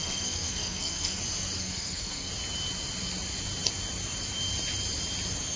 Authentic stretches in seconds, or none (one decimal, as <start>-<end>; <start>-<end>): 1.2-1.6; 2.3-5.6